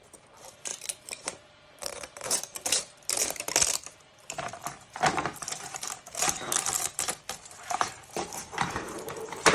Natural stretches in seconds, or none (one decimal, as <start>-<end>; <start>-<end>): none